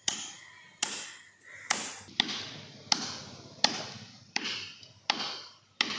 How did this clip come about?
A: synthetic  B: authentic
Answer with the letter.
B